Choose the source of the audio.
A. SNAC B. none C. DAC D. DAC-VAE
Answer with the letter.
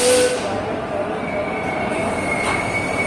B